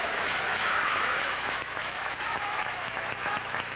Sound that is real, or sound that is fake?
fake